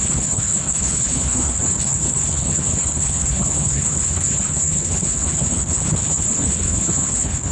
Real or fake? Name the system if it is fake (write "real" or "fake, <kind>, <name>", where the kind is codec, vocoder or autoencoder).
fake, codec, HILCodec